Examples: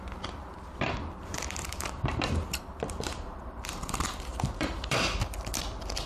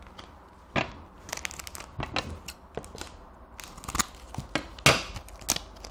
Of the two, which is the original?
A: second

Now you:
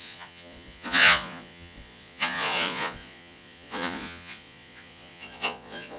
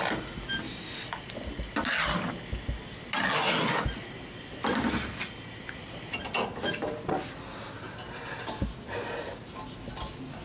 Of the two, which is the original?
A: second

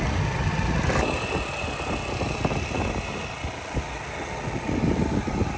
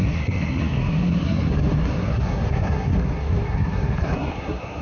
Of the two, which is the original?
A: first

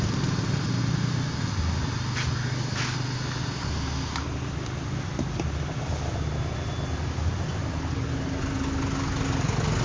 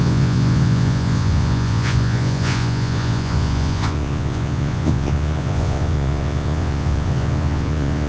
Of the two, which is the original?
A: first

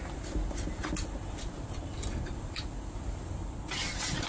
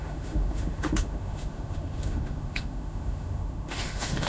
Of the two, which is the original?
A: first